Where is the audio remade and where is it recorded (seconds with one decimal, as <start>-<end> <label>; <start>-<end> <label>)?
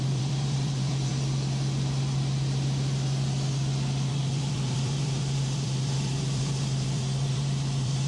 0.0-1.1 remade; 1.1-4.1 recorded; 4.1-8.1 remade